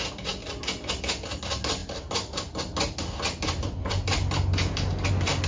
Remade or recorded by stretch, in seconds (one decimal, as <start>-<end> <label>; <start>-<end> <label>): 0.0-5.5 recorded